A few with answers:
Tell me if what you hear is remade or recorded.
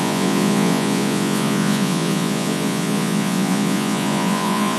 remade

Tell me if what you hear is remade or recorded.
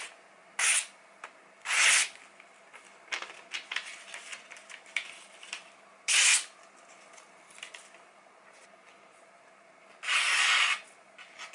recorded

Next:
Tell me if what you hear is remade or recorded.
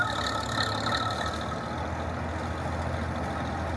recorded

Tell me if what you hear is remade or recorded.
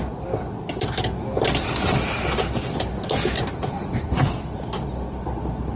recorded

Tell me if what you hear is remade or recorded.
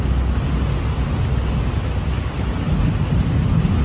recorded